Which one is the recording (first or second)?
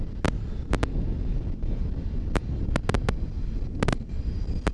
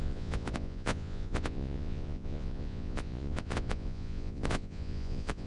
first